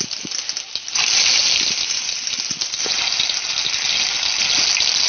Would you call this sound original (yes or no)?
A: yes